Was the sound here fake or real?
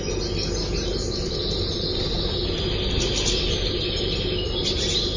real